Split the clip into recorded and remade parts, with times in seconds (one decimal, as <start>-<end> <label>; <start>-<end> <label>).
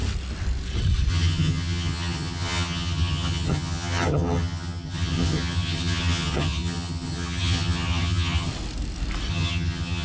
0.0-1.1 recorded; 1.1-8.5 remade; 8.5-9.3 recorded; 9.3-10.0 remade